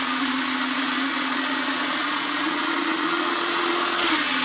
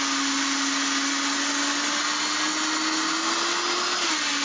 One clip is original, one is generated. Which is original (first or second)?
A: second